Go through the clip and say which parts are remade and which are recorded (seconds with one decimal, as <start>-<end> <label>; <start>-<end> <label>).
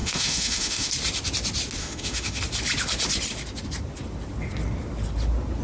0.0-0.9 remade; 0.9-1.8 recorded; 1.8-2.4 remade; 2.4-5.6 recorded